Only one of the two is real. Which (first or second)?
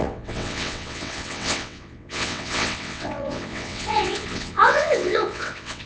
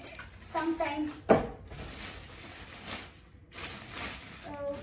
second